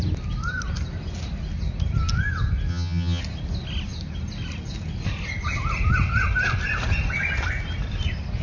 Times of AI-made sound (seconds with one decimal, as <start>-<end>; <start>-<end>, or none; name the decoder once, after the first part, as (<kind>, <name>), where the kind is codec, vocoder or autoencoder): 2.7-3.2 (vocoder, HiFi-GAN)